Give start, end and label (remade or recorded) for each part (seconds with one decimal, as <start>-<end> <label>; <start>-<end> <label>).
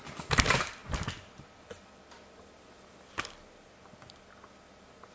0.0-5.1 recorded